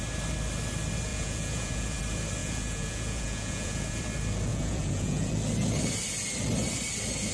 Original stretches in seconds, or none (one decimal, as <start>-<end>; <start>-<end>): 0.0-1.1; 2.0-2.4; 4.0-4.5; 5.3-7.3